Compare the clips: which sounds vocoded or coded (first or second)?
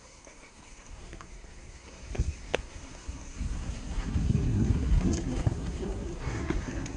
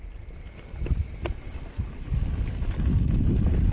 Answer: first